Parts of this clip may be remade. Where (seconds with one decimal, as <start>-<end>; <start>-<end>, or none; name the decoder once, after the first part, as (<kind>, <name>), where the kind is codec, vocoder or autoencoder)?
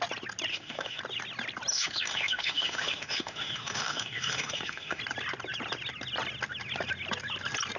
0.5-1.0 (autoencoder, DAC-VAE); 1.7-5.0